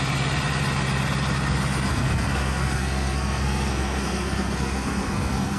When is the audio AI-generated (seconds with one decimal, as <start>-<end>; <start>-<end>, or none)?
1.9-5.6